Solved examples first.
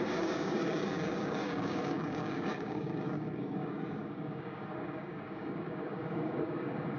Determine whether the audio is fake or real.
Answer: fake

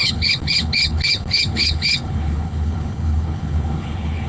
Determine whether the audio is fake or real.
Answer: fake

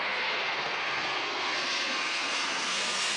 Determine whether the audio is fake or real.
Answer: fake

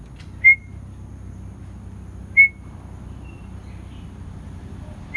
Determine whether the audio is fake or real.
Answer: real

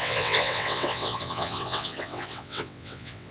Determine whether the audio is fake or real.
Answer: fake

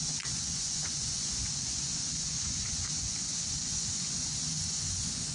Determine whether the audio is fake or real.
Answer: fake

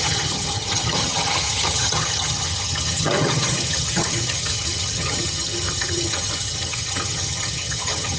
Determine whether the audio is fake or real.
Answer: fake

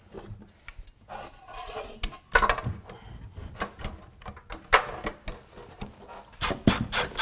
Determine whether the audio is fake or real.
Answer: real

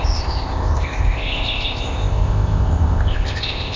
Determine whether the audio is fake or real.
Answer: fake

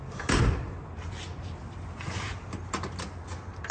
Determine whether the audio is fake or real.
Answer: real